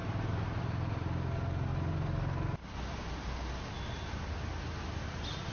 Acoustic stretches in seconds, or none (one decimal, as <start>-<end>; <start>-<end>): 0.0-5.5